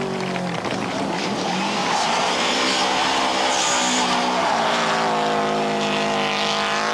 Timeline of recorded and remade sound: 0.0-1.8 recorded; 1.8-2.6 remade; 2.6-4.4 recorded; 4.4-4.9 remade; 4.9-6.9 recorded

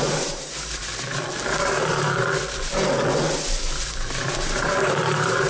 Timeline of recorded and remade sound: 0.0-0.9 remade; 0.9-4.2 recorded; 4.2-5.5 remade